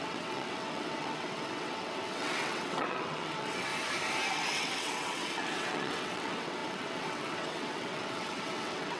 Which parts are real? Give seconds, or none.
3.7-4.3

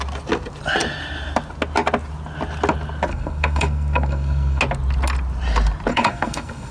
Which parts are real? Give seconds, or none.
0.0-3.1; 4.6-5.9

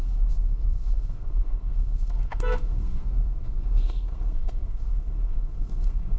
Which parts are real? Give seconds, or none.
none